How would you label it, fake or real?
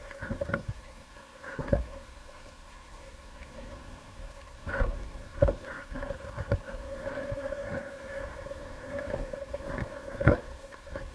fake